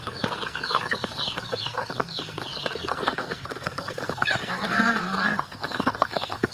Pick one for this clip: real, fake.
fake